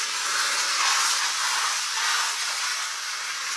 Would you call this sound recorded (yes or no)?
yes